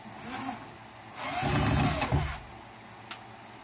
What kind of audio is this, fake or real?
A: real